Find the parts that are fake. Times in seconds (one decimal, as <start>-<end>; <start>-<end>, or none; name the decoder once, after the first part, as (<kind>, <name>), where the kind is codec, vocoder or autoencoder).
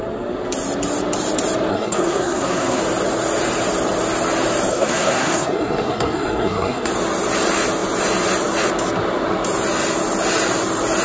1.7-2.8 (codec, SNAC); 4.7-6.9